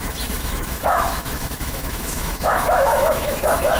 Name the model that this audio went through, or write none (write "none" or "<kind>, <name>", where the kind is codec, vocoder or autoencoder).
autoencoder, DAC-VAE